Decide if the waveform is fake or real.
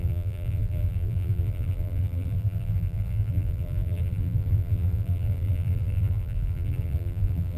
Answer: fake